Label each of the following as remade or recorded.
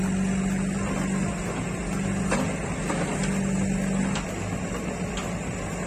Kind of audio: recorded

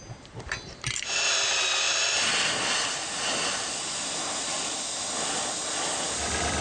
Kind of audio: recorded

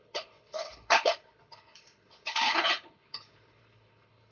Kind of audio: remade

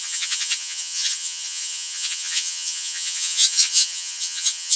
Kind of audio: remade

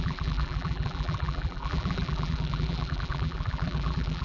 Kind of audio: remade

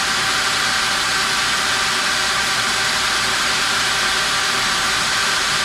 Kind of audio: remade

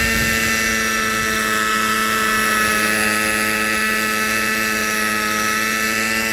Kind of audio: recorded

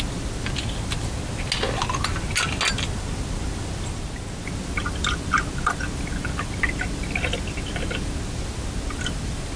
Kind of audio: recorded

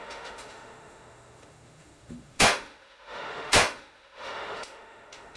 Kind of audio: remade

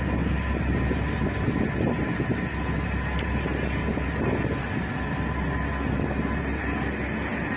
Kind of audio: recorded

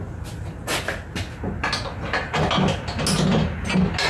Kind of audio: recorded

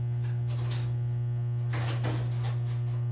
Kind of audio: recorded